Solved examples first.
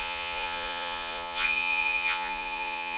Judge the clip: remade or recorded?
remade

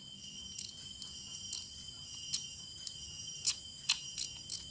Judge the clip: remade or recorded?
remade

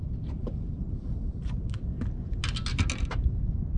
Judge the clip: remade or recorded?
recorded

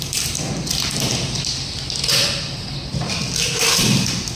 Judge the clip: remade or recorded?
recorded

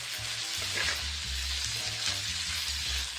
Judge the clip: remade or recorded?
recorded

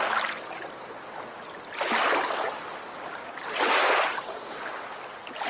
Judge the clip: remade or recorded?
recorded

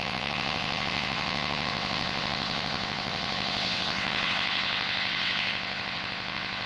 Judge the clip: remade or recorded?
remade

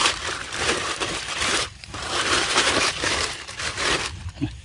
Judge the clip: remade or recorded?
remade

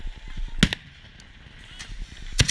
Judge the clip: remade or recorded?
recorded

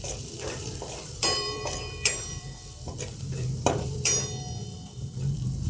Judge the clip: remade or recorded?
remade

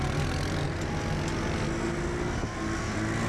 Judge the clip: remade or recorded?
recorded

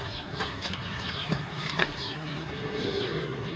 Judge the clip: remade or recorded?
remade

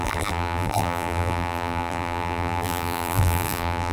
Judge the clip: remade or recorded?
remade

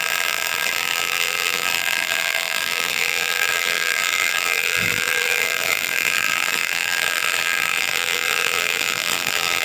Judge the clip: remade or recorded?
remade